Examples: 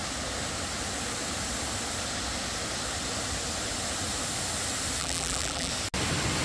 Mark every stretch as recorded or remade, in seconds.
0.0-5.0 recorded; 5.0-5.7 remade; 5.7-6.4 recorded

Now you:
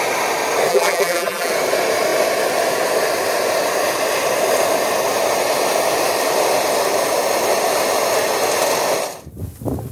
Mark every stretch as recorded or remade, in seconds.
0.0-0.7 recorded; 0.7-1.5 remade; 1.5-9.9 recorded

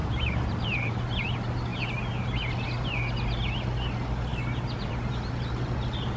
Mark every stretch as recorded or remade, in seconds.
0.0-0.9 remade; 0.9-6.2 recorded

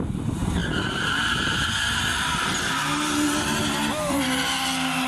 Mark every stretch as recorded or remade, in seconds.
0.0-5.1 recorded

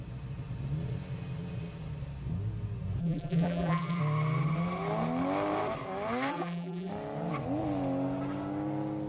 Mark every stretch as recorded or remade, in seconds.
0.0-3.0 recorded; 3.0-4.0 remade; 4.0-6.3 recorded; 6.3-6.9 remade; 6.9-9.1 recorded

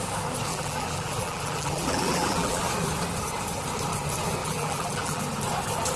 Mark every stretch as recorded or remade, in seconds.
0.0-0.5 recorded; 0.5-2.6 remade; 2.6-4.4 recorded; 4.4-5.2 remade; 5.2-6.0 recorded

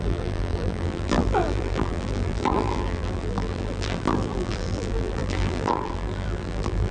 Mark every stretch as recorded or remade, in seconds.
0.0-6.9 remade